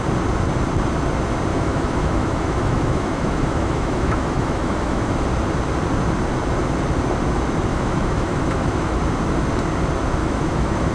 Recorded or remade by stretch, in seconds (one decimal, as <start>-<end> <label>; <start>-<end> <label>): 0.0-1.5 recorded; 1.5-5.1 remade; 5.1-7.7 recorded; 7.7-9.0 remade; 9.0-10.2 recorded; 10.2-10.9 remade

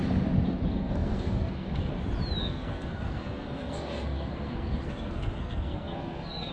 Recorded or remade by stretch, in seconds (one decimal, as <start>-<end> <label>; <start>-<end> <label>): 0.0-0.7 recorded; 0.7-1.9 remade; 1.9-2.4 recorded; 2.4-6.5 remade

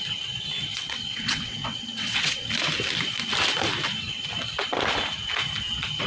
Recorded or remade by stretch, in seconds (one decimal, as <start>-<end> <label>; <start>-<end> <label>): 0.0-0.7 recorded; 0.7-2.5 remade; 2.5-6.1 recorded